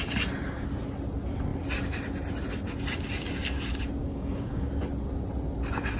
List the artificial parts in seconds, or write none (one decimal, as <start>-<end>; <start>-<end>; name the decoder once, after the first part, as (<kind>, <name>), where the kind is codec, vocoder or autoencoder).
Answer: 4.0-4.7 (codec, DAC)